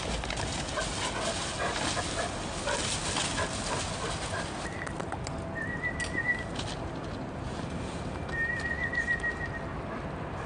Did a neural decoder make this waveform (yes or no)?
no